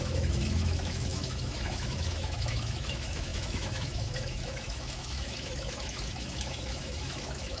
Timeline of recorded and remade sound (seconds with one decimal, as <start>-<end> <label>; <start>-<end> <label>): 0.0-7.6 remade